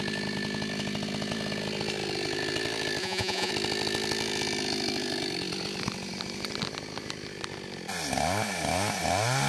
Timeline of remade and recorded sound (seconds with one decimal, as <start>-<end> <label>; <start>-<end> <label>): 0.0-3.0 recorded; 3.0-3.5 remade; 3.5-9.5 recorded